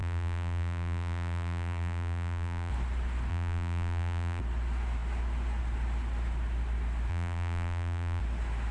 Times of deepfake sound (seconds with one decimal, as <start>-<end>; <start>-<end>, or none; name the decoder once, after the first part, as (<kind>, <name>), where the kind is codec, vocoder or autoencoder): 0.0-2.7 (vocoder, BigVGAN v2); 3.3-4.4; 7.1-8.2